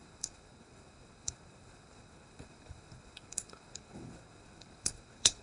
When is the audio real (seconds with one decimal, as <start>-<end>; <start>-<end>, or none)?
none

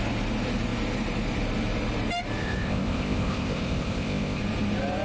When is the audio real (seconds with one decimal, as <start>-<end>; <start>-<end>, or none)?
0.0-2.4; 4.4-5.0

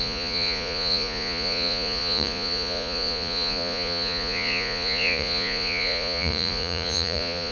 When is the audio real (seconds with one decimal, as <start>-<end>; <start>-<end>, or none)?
none

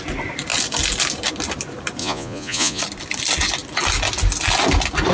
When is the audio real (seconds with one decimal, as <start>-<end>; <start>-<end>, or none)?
0.0-2.0; 2.8-5.1

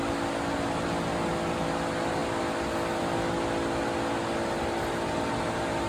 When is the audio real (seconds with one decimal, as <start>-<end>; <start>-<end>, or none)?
0.0-5.9